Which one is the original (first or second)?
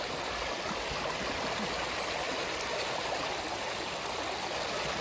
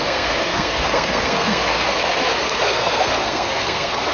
first